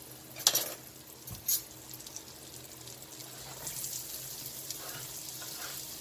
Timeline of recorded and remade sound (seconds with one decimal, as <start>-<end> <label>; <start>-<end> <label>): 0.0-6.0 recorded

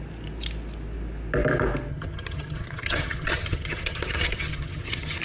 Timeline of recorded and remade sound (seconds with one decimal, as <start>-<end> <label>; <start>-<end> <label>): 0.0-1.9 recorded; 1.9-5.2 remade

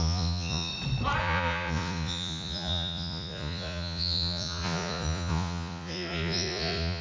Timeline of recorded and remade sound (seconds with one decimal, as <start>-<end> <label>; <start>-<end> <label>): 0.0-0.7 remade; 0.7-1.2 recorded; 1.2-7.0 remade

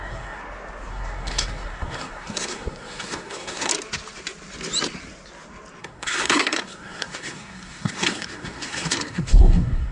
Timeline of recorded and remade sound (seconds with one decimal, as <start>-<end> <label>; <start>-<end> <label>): 0.0-0.4 remade; 0.4-0.9 recorded; 0.9-3.7 remade; 3.7-5.8 recorded; 5.8-9.9 remade